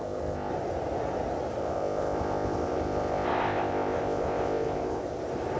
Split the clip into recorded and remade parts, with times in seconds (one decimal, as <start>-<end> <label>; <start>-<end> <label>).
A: 0.0-0.5 remade; 0.5-1.6 recorded; 1.6-5.0 remade; 5.0-5.6 recorded